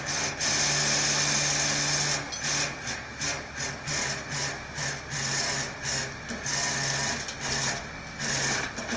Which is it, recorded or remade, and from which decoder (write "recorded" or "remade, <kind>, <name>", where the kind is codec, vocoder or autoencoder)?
recorded